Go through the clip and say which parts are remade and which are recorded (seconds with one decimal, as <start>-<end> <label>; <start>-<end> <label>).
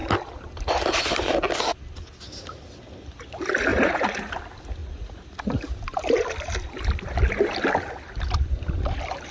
0.0-3.7 recorded; 3.7-4.3 remade; 4.3-4.8 recorded; 4.8-5.4 remade; 5.4-9.3 recorded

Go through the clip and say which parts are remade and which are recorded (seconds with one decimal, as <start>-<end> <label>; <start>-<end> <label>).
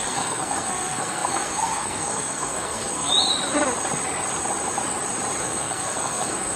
0.0-3.1 remade; 3.1-5.4 recorded; 5.4-6.6 remade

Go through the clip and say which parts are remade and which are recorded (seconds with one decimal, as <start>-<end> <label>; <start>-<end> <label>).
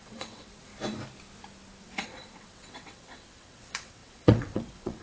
0.0-0.7 remade; 0.7-1.8 recorded; 1.8-5.0 remade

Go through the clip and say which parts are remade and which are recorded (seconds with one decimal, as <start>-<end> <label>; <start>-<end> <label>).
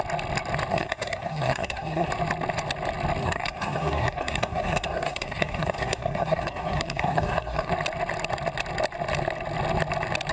0.0-0.7 recorded; 0.7-2.1 remade; 2.1-3.2 recorded; 3.2-7.7 remade; 7.7-10.3 recorded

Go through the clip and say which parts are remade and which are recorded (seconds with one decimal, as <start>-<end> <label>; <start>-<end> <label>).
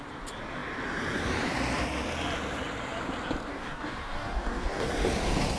0.0-3.5 recorded; 3.5-4.9 remade; 4.9-5.6 recorded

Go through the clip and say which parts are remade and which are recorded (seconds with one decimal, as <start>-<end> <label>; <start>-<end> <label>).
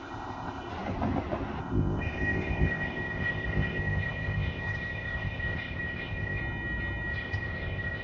0.0-0.7 remade; 0.7-1.6 recorded; 1.6-6.4 remade; 6.4-7.1 recorded; 7.1-8.0 remade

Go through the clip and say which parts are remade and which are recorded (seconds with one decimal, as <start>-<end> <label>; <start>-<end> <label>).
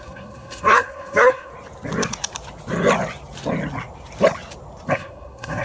0.0-1.5 remade; 1.5-4.9 recorded; 4.9-5.6 remade